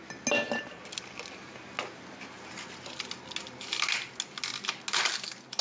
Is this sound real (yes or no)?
yes